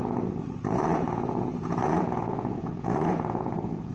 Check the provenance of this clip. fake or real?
fake